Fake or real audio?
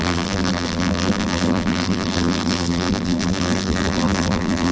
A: fake